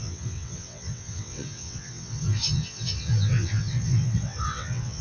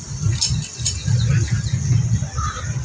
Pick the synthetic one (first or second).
first